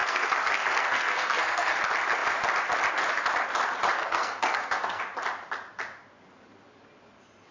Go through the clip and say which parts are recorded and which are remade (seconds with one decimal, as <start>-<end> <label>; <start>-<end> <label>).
0.0-1.8 remade; 1.8-4.0 recorded; 4.0-5.0 remade; 5.0-7.5 recorded